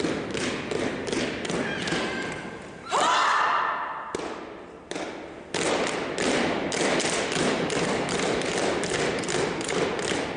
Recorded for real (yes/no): yes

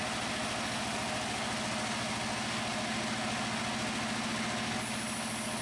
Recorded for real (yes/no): yes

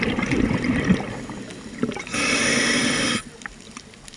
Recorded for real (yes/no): yes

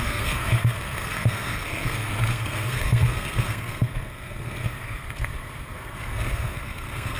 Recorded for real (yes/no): no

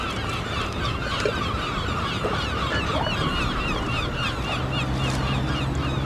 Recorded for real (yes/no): yes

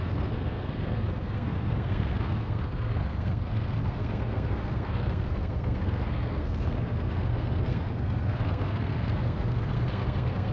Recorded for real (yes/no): no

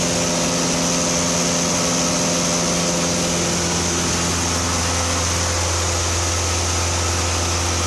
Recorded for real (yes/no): yes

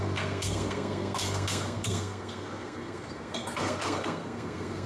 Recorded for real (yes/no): no